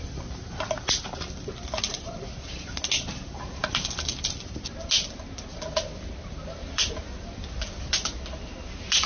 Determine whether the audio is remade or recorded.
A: recorded